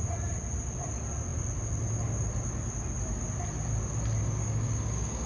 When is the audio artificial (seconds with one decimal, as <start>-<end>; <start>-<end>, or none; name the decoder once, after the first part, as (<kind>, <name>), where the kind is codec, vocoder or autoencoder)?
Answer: 4.2-5.3 (codec, DAC)